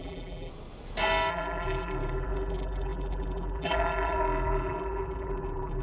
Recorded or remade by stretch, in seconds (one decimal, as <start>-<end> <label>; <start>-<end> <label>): 0.0-0.5 remade; 0.5-1.3 recorded; 1.3-5.8 remade